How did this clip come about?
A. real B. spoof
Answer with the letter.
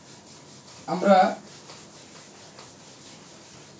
A